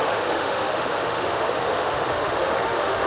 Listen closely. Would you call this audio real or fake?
fake